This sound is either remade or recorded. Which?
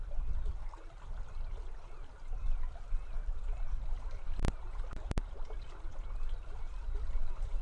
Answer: recorded